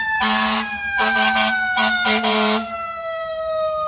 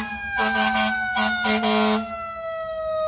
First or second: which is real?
second